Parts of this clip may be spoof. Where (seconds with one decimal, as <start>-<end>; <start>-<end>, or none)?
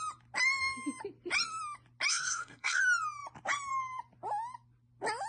2.1-2.8